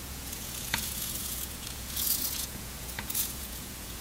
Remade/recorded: remade